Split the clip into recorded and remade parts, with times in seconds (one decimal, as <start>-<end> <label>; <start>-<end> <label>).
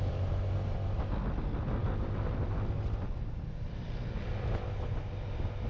0.0-5.7 recorded